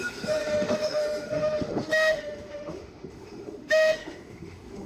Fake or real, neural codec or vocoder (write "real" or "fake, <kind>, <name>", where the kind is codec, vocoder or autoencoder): fake, autoencoder, DAC-VAE